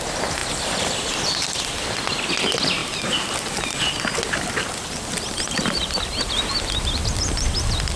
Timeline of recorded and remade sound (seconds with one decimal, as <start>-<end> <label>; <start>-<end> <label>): 0.0-8.0 recorded